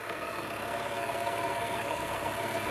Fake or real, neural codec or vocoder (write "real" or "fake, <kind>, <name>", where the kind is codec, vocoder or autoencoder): fake, codec, SNAC